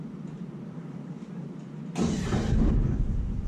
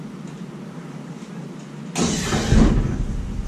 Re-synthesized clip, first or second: first